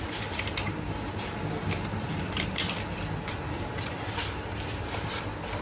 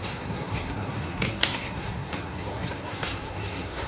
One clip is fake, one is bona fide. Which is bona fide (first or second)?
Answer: first